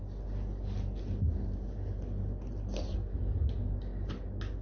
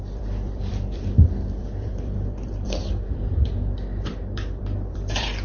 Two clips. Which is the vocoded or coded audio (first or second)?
second